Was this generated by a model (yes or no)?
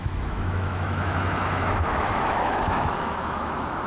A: yes